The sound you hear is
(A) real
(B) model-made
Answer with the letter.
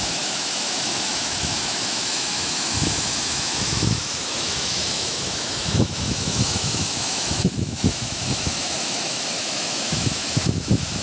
B